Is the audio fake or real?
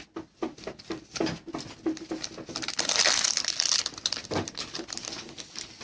real